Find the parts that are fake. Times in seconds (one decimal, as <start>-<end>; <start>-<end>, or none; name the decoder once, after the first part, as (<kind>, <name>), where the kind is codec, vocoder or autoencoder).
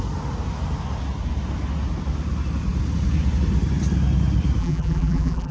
4.6-5.5 (vocoder, BigVGAN v2)